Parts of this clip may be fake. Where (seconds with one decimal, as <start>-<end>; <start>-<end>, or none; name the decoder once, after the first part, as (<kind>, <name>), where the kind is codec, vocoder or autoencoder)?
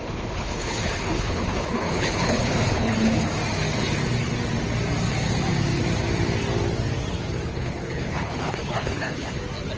0.0-3.3 (codec, HILCodec); 7.5-9.4